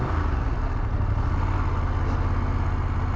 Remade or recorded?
recorded